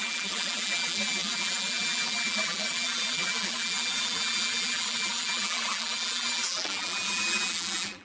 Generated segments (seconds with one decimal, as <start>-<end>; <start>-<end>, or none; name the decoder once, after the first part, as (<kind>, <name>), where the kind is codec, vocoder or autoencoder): 0.0-8.0 (vocoder, BigVGAN v2)